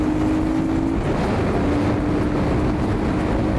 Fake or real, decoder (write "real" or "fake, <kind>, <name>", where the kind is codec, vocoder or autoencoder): real